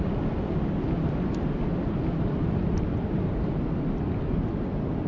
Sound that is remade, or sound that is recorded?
recorded